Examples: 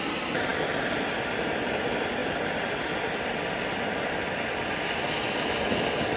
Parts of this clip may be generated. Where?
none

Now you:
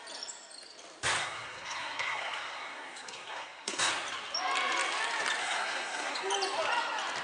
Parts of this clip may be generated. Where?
1.2-3.9 (codec, SNAC); 5.4-6.2

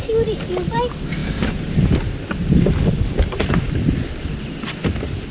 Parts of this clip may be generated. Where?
none

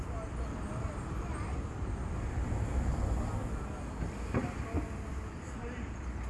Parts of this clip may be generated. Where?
none

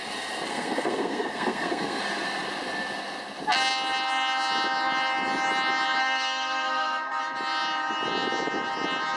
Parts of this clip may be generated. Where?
0.5-2.0 (codec, SNAC); 6.0-7.2

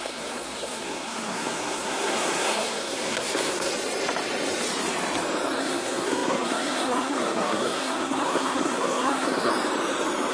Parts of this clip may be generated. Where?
0.0-3.7 (codec, SNAC); 5.6-9.5

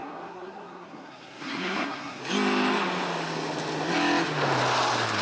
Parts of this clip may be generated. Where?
0.0-2.2 (codec, SNAC)